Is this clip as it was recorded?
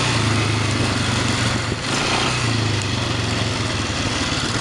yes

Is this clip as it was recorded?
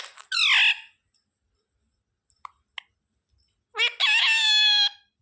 yes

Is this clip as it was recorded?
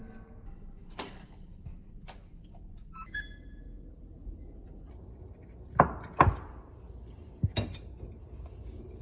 yes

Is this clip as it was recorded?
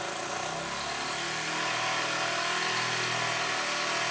yes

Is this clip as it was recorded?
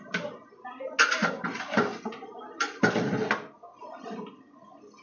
yes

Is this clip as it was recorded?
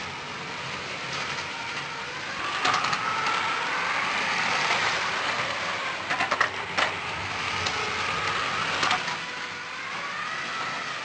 yes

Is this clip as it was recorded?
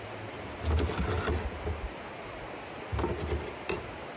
yes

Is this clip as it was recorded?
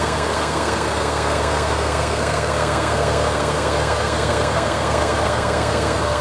no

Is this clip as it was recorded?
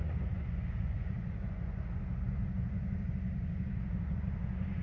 no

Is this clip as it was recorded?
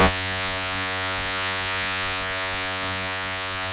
no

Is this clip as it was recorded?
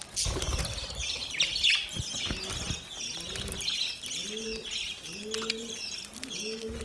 yes